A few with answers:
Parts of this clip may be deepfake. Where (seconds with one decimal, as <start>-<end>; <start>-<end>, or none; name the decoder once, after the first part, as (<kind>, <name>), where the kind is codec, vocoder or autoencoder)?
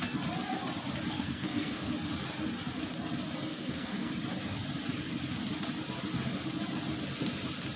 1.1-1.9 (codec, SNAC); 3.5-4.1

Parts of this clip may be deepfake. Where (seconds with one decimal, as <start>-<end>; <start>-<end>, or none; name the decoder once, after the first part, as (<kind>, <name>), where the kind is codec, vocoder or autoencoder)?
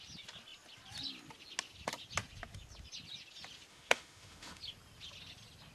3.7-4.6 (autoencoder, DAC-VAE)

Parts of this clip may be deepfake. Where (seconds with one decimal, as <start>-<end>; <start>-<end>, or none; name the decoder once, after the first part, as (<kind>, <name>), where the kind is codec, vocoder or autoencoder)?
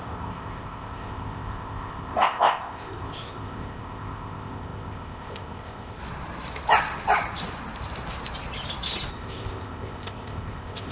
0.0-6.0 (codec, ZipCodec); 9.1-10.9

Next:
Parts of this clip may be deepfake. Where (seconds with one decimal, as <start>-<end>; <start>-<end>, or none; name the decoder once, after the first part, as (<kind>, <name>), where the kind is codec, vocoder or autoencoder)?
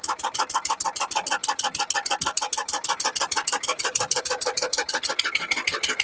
none